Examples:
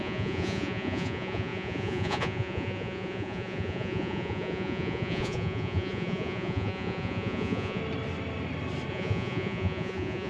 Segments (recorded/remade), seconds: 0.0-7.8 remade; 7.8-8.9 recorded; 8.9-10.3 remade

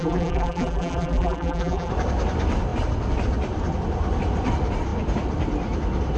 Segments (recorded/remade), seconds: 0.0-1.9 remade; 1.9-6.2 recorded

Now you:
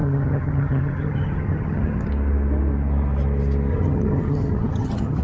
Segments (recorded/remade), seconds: 0.0-2.1 remade; 2.1-3.7 recorded; 3.7-5.2 remade

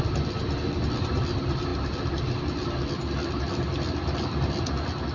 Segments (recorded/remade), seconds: 0.0-5.1 recorded

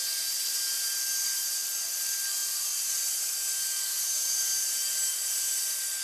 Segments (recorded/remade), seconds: 0.0-6.0 recorded

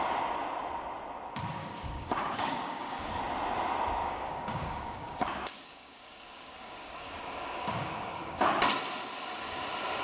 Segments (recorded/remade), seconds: 0.0-1.6 recorded; 1.6-3.2 remade; 3.2-4.0 recorded; 4.0-8.5 remade; 8.5-10.0 recorded